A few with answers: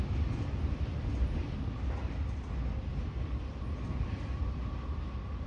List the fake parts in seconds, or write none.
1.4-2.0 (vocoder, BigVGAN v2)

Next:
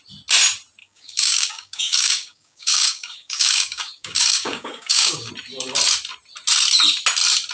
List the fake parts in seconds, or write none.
0.8-5.3 (codec, DAC)

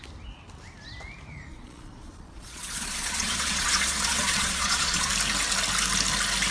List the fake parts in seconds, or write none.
1.5-5.1 (vocoder, Vocos)